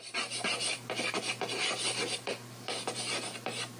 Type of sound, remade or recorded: recorded